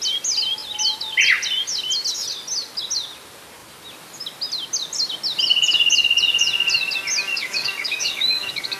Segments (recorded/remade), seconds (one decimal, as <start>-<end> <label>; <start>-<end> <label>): 0.0-7.3 recorded; 7.3-8.8 remade